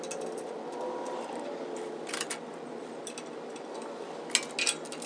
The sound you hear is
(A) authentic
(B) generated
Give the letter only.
A